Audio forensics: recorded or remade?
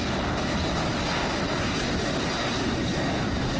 recorded